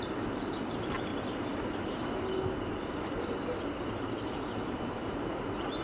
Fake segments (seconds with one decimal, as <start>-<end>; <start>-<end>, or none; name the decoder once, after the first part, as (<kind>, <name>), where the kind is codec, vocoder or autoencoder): 0.0-1.1 (vocoder, BigVGAN v2); 4.0-5.8